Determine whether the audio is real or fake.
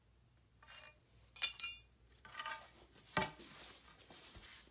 real